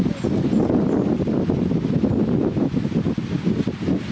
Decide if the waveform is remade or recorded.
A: recorded